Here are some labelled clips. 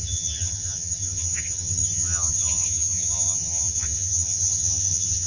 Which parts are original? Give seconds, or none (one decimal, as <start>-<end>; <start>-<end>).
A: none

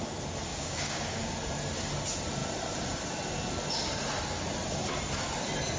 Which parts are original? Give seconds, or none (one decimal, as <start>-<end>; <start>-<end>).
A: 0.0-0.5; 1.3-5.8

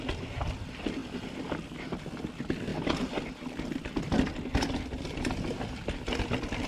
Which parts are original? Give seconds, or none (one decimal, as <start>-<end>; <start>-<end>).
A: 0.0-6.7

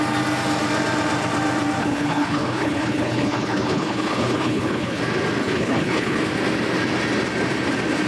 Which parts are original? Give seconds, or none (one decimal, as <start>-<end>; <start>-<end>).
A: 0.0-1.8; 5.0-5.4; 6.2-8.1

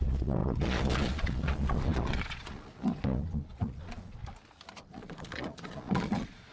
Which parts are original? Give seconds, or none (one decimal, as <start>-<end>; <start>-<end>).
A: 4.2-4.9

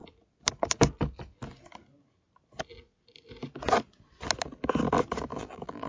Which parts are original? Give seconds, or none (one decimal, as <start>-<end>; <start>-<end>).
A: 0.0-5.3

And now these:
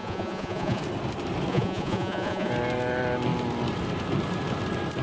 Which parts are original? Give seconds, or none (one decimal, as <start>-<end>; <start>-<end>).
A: 0.8-1.5; 2.5-5.0